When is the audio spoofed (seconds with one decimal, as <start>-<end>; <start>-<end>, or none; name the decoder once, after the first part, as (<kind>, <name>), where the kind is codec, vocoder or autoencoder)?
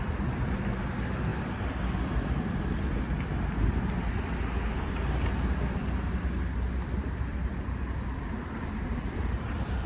none